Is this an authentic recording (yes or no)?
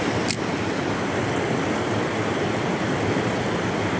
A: yes